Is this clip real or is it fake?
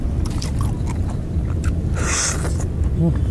real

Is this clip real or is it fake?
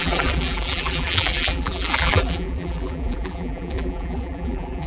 fake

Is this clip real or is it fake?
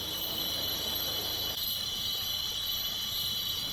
fake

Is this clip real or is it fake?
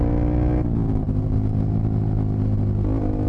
real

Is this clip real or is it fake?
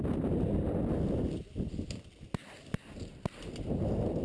real